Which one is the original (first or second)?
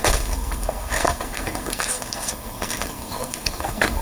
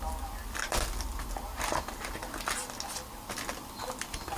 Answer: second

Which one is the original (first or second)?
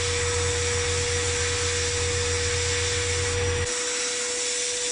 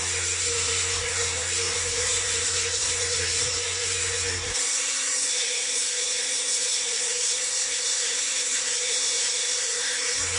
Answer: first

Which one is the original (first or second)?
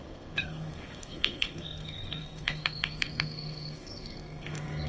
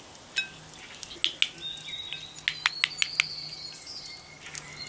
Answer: second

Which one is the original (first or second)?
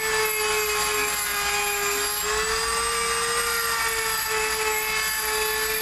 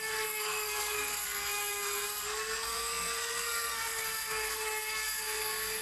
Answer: first